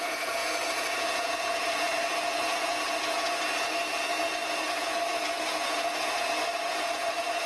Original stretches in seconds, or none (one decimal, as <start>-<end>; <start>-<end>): none